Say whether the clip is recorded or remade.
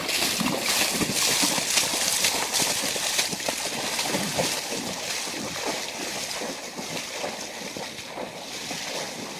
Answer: recorded